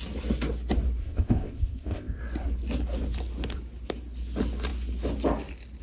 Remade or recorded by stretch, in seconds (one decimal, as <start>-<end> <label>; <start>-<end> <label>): 0.0-1.0 recorded; 1.0-2.2 remade; 2.2-5.8 recorded